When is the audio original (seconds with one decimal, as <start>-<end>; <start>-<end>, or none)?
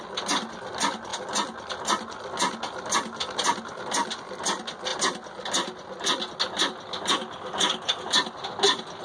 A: 0.0-9.0